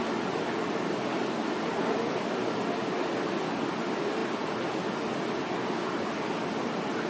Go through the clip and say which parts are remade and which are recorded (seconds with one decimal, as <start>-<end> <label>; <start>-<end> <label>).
0.0-7.1 recorded